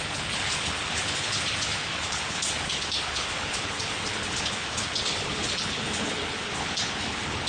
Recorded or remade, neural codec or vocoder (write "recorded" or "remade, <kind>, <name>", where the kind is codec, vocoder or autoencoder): remade, codec, HILCodec